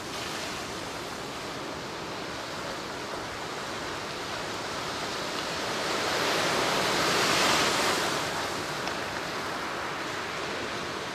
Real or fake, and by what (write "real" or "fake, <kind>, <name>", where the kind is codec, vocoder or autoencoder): real